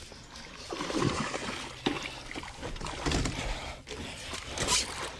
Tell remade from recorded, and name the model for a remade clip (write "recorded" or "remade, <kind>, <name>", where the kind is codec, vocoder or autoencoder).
recorded